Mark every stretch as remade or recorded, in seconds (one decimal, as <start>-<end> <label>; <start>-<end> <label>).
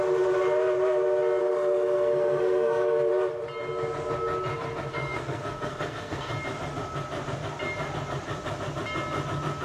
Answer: 0.0-1.4 recorded; 1.4-3.1 remade; 3.1-4.9 recorded; 4.9-6.3 remade; 6.3-9.6 recorded